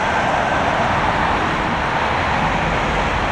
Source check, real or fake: real